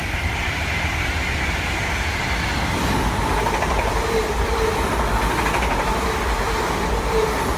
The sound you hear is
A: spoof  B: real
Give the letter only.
B